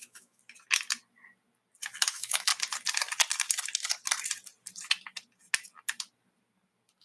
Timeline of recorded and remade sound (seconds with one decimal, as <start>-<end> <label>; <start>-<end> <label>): 0.0-0.4 remade; 0.4-2.1 recorded; 2.1-2.5 remade; 2.5-7.0 recorded

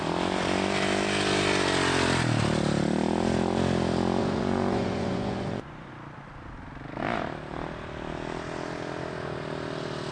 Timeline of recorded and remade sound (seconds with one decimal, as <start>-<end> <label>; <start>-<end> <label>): 0.0-4.2 recorded; 4.2-5.9 remade; 5.9-10.1 recorded